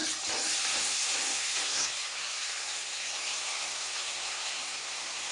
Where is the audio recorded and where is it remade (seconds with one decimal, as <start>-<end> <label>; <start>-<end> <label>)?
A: 0.0-0.8 recorded; 0.8-5.3 remade